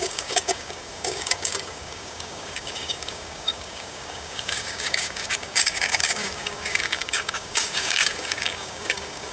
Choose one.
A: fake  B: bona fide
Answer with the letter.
A